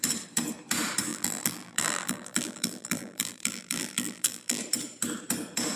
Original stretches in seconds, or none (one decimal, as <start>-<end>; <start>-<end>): 0.0-1.1; 4.6-5.8